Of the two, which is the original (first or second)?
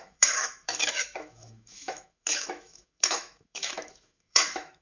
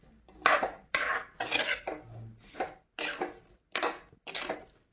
second